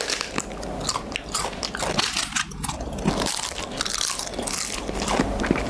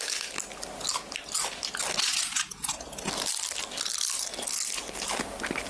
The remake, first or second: first